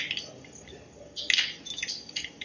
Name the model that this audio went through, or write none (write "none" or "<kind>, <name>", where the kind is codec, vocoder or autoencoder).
none